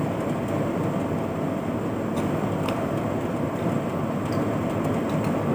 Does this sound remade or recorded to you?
recorded